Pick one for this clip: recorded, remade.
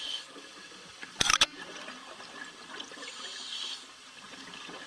remade